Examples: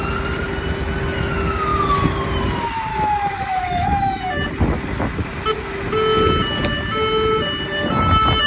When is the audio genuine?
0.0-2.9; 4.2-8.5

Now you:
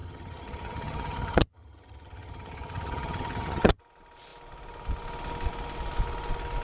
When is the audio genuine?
3.8-6.6

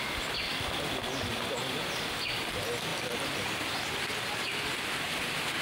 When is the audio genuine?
0.5-1.3

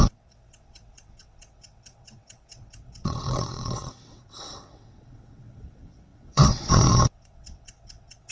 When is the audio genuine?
none

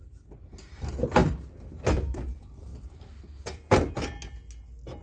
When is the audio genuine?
0.0-5.0